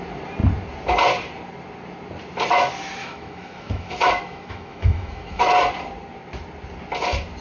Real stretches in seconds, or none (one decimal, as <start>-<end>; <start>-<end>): 0.0-3.0; 5.4-7.4